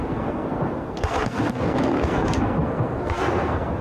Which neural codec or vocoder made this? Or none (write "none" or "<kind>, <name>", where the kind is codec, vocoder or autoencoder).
codec, SNAC